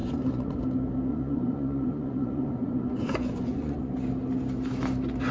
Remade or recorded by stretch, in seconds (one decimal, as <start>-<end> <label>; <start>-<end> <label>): 0.0-0.6 remade; 0.6-1.1 recorded; 1.1-3.9 remade; 3.9-5.3 recorded